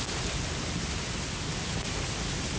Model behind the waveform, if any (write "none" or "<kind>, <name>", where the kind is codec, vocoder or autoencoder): none